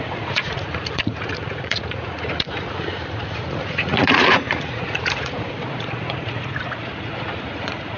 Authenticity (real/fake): fake